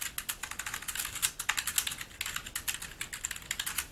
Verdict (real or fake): real